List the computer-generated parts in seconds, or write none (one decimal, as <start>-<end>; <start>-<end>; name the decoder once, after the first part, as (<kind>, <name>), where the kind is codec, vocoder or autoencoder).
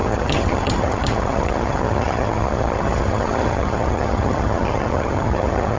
0.0-5.8 (vocoder, HiFi-GAN)